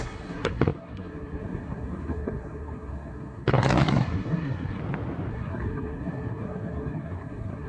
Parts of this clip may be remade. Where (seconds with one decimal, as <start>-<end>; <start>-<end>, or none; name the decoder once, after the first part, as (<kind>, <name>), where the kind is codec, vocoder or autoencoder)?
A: 0.0-4.8 (codec, SNAC); 5.3-7.7